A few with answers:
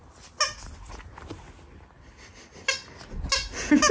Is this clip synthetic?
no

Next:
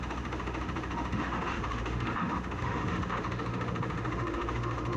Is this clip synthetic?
yes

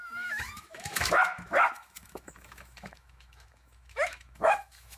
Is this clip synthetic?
yes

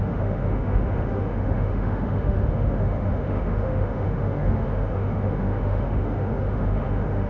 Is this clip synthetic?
yes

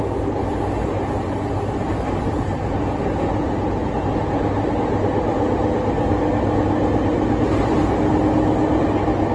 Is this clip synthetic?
no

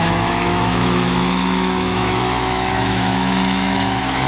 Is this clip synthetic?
yes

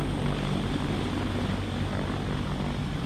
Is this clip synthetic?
no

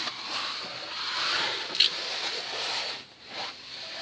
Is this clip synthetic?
no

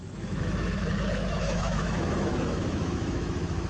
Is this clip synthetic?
yes